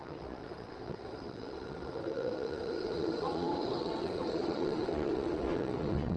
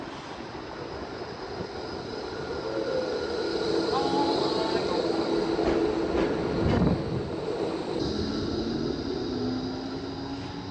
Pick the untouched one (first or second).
second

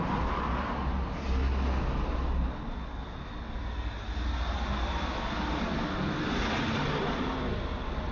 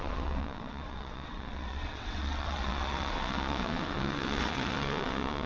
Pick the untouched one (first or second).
first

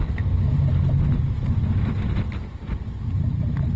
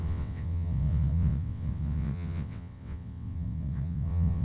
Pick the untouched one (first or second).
first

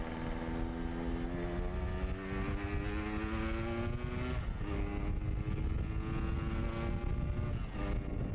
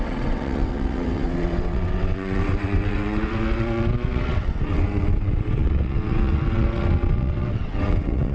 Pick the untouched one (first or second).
first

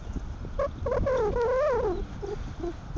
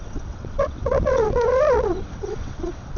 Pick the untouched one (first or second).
first